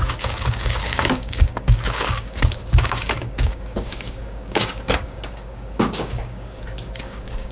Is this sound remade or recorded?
remade